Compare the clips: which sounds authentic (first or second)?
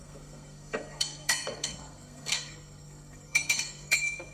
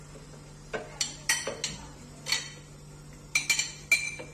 second